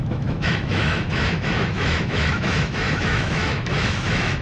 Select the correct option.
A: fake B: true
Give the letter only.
A